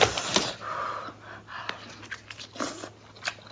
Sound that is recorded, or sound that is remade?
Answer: recorded